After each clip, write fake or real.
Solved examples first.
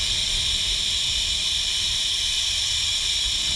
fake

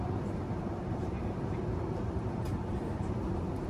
fake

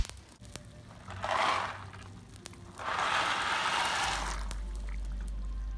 real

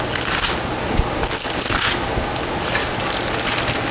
real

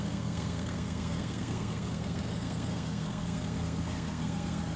fake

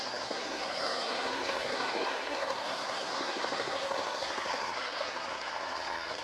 fake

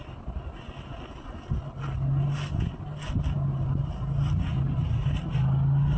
real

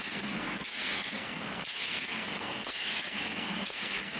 fake